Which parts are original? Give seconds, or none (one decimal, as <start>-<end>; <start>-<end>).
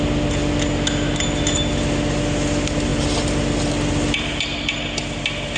0.0-5.6